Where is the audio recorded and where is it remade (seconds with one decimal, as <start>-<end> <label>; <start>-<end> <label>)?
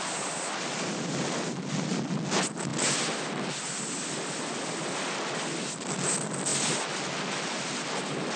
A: 0.0-8.4 recorded